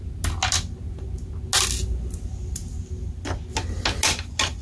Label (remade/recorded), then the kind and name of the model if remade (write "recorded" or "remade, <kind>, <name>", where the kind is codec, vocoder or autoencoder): recorded